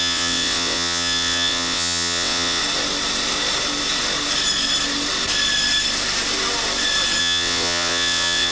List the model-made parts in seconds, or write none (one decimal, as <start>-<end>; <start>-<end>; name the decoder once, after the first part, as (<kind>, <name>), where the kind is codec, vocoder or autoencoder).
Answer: 0.0-2.6 (vocoder, WaveNeXt); 7.2-8.5